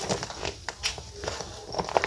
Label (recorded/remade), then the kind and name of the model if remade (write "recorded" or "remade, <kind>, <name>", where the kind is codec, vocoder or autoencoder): recorded